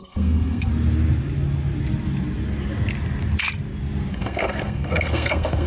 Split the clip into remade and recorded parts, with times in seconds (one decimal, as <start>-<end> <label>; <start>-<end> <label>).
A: 0.0-0.7 remade; 0.7-4.1 recorded; 4.1-5.7 remade